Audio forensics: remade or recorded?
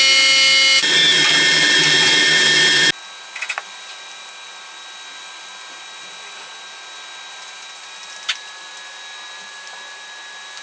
recorded